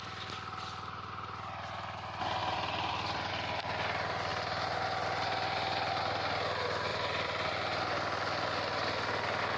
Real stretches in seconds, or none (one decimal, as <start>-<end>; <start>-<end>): 0.0-2.4; 3.3-6.9; 7.5-9.6